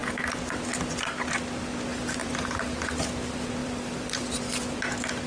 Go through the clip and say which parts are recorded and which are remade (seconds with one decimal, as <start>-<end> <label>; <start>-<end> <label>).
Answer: 0.0-1.9 recorded; 1.9-3.0 remade; 3.0-3.6 recorded; 3.6-4.4 remade; 4.4-5.3 recorded